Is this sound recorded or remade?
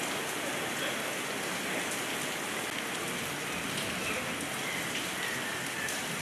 recorded